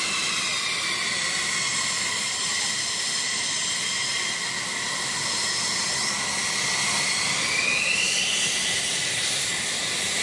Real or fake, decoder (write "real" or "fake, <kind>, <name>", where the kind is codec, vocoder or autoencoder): real